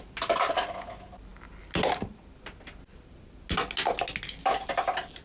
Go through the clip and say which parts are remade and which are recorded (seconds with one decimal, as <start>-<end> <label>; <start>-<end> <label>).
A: 0.0-5.2 recorded